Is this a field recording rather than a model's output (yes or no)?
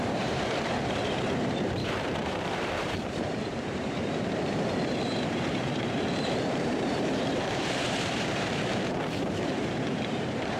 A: no